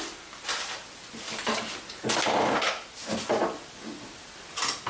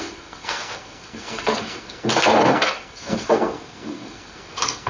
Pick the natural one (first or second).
first